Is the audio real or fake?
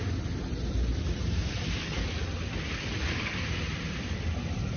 fake